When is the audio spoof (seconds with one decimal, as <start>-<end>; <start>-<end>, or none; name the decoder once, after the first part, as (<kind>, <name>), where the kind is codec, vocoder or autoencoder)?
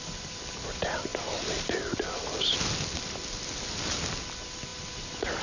none